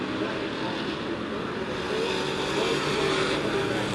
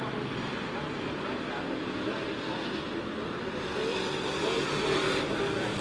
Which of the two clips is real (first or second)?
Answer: first